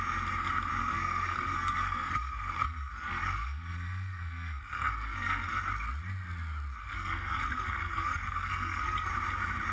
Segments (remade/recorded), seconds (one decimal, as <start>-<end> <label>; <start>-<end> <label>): 0.0-0.8 recorded; 0.8-5.6 remade; 5.6-6.8 recorded; 6.8-9.1 remade; 9.1-9.7 recorded